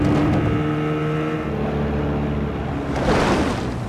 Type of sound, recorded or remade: recorded